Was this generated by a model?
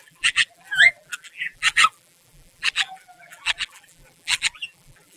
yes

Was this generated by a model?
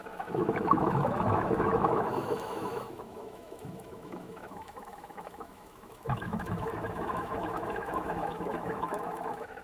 yes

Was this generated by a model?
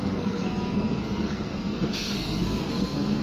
yes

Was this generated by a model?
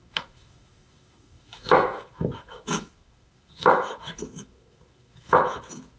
yes